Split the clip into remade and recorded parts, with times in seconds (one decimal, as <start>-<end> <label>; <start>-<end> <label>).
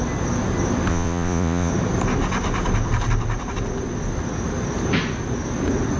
0.0-0.9 recorded; 0.9-1.7 remade; 1.7-6.0 recorded